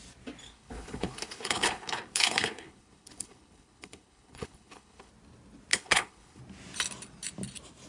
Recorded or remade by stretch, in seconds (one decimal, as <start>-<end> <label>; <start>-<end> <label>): 0.0-0.4 recorded; 0.4-5.1 remade; 5.1-5.7 recorded; 5.7-6.4 remade; 6.4-7.9 recorded